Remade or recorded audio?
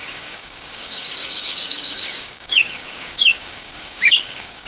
remade